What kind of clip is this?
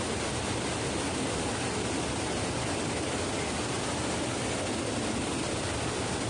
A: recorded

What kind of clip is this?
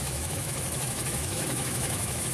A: remade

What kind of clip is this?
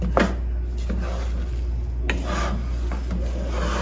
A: recorded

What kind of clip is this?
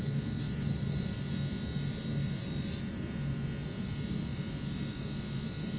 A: recorded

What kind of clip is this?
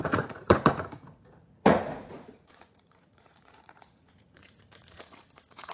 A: remade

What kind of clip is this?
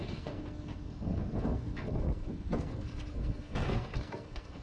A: remade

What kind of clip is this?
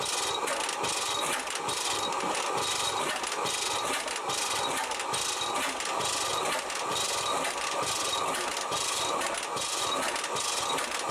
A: recorded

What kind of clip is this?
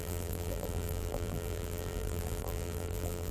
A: remade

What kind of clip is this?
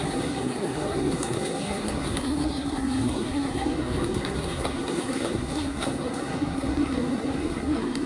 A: remade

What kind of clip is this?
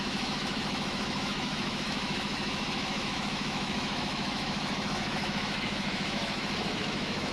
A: remade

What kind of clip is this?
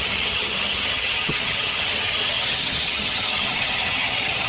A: remade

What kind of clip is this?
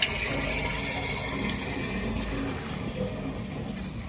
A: recorded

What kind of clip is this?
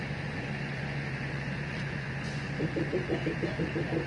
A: remade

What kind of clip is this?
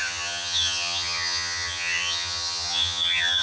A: remade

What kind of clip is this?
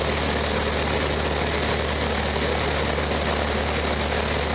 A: recorded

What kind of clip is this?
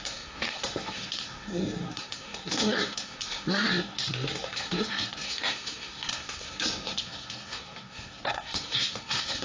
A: remade